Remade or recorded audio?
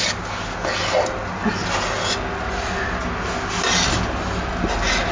recorded